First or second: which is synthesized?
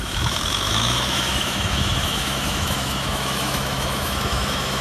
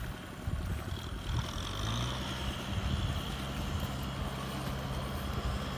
first